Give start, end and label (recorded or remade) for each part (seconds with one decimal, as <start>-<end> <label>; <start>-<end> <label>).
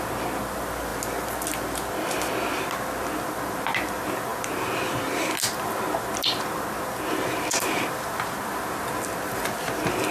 0.0-10.1 recorded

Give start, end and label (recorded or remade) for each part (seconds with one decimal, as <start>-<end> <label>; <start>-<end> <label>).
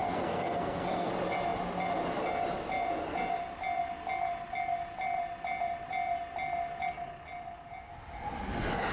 0.0-1.1 remade; 1.1-8.9 recorded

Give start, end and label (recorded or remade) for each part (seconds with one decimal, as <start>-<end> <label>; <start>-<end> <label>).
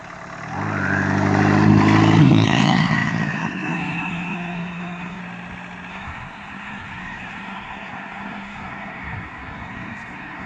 0.0-2.2 recorded; 2.2-5.2 remade; 5.2-5.9 recorded; 5.9-10.5 remade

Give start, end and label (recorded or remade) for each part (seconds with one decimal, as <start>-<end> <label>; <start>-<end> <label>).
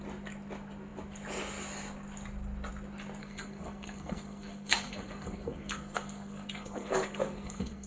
0.0-3.2 recorded; 3.2-7.9 remade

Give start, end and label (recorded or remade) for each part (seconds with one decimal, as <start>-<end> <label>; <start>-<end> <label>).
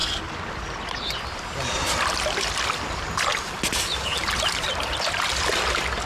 0.0-6.1 recorded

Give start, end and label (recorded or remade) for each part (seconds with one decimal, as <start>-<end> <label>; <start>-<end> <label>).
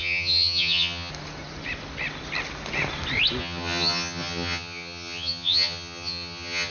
0.0-1.1 remade; 1.1-3.4 recorded; 3.4-6.7 remade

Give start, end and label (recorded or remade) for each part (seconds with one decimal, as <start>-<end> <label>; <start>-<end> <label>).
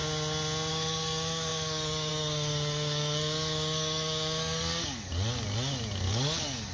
0.0-0.7 recorded; 0.7-5.1 remade; 5.1-6.1 recorded; 6.1-6.7 remade